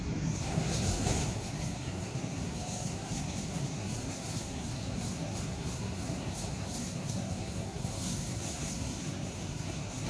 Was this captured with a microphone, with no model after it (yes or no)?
no